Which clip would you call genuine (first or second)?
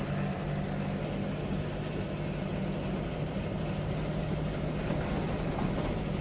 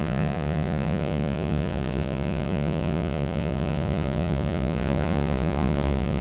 first